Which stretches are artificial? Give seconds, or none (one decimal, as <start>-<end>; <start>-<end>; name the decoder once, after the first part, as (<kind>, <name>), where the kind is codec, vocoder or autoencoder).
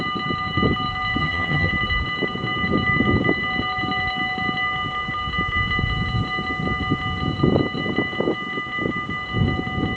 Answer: 1.2-1.7 (vocoder, HiFi-GAN)